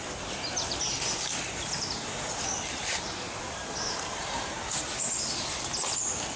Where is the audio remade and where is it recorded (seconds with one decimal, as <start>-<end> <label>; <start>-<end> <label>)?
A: 0.0-1.3 recorded; 1.3-5.1 remade; 5.1-6.4 recorded